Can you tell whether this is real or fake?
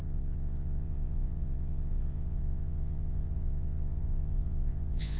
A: fake